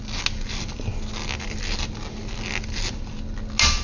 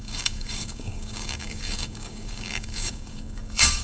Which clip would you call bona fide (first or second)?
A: first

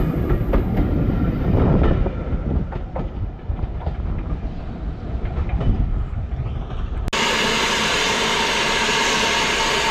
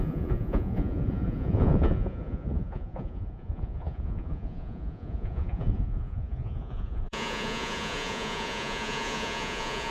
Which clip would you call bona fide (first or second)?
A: first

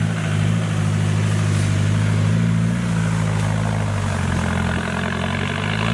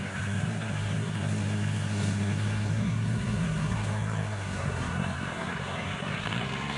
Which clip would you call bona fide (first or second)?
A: first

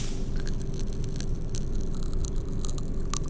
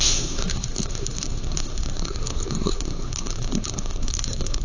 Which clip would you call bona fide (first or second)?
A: first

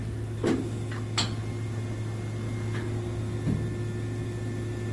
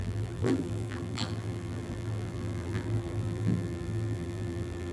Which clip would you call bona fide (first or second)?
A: first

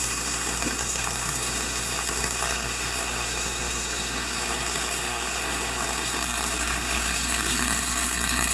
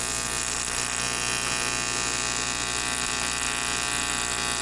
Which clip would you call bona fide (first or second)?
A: second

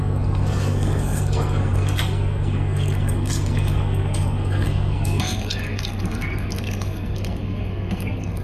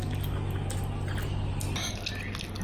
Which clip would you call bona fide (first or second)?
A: second